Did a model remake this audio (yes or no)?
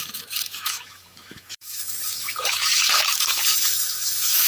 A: yes